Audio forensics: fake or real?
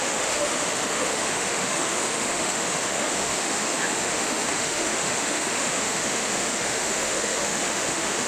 fake